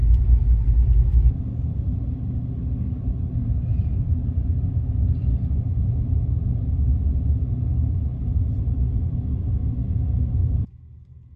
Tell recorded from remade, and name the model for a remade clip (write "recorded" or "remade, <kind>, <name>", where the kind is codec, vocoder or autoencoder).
recorded